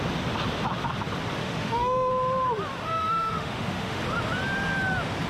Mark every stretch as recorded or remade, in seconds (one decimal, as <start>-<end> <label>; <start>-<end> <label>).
0.0-1.4 recorded; 1.4-2.1 remade; 2.1-2.8 recorded; 2.8-4.0 remade; 4.0-5.3 recorded